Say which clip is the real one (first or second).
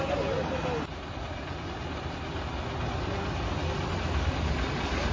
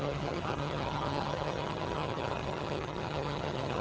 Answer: first